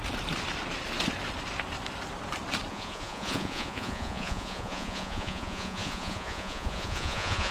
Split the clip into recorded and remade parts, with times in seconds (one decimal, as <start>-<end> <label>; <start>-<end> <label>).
0.0-2.7 recorded; 2.7-7.5 remade